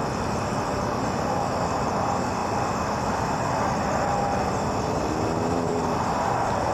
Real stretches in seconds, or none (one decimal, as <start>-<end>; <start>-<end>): 0.0-6.7